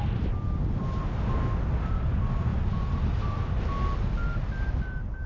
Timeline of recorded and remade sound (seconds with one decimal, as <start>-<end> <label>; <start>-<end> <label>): 0.0-5.3 recorded